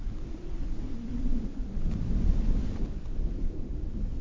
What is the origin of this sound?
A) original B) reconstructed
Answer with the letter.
A